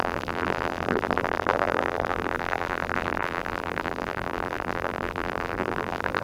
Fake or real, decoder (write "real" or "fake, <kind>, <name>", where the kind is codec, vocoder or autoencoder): fake, vocoder, BigVGAN v2